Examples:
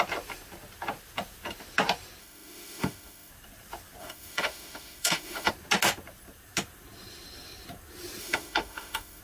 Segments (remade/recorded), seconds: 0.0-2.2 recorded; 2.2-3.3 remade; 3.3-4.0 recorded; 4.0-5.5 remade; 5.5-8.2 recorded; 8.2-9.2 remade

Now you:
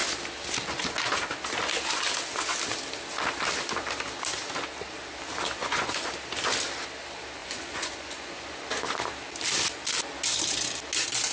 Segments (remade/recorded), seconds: 0.0-5.6 recorded; 5.6-6.1 remade; 6.1-7.4 recorded; 7.4-8.6 remade; 8.6-11.3 recorded